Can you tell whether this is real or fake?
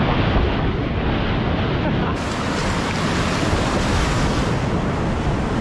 real